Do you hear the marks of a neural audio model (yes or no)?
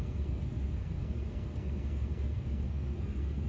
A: yes